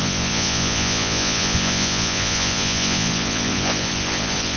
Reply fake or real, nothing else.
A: fake